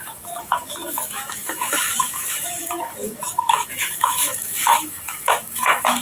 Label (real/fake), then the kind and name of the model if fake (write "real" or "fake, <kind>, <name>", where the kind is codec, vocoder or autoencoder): fake, autoencoder, DAC-VAE